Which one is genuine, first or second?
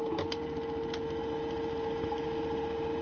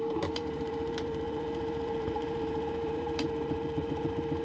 first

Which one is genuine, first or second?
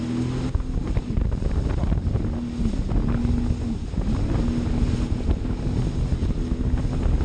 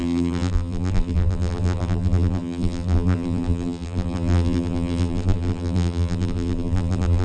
first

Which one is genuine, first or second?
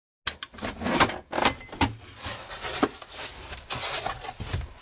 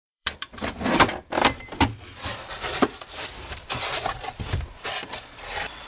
first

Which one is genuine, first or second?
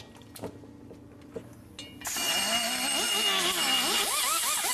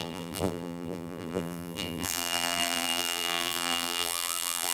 first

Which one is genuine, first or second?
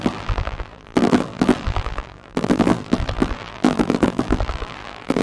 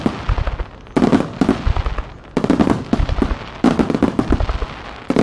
second